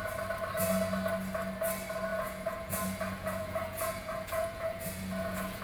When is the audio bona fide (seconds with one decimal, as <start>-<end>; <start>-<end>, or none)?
0.0-2.1